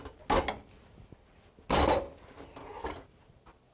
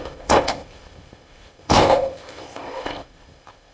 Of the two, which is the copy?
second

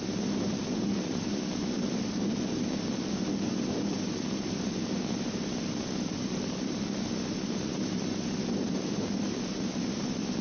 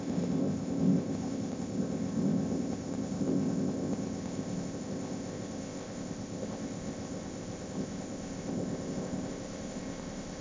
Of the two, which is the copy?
second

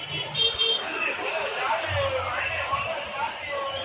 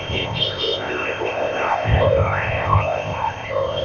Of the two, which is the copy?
second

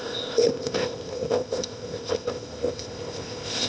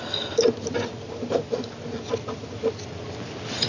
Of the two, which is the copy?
first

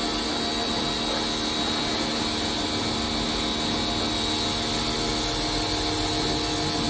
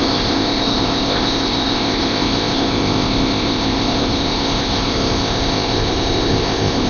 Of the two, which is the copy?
second